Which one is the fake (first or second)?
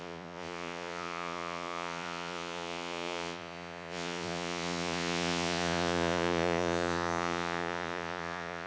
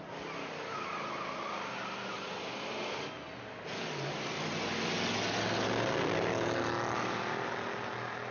first